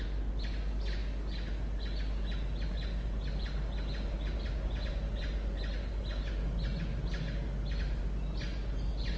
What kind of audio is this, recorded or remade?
recorded